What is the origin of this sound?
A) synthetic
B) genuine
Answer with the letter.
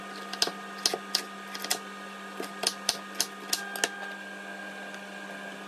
B